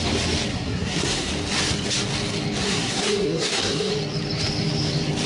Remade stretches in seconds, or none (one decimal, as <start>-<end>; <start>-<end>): 0.5-1.3; 2.6-3.9